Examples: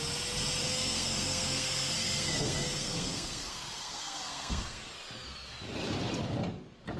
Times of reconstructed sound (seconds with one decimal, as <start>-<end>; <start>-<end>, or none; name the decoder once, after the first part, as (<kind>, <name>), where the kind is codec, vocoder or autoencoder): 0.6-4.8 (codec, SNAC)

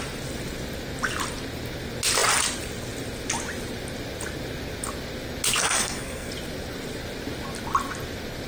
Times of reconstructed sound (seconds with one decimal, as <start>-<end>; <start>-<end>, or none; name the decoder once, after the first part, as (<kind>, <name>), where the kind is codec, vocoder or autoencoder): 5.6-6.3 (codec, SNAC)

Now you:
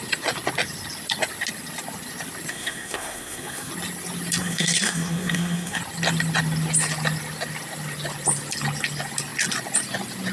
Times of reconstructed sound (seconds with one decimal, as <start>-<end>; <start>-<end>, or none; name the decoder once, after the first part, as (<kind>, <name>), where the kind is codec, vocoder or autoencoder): 2.5-3.7 (codec, SNAC); 4.4-5.8

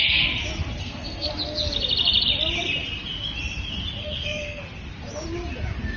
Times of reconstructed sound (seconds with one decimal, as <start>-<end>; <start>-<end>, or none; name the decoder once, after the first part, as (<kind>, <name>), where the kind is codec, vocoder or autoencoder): 0.8-1.3 (codec, SNAC); 4.0-4.6

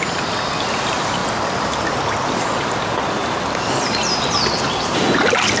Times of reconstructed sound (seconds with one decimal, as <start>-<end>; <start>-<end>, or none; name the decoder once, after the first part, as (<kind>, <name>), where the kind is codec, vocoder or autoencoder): none